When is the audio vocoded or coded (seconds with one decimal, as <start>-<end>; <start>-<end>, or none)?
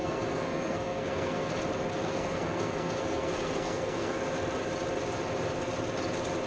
0.0-1.5; 1.9-4.2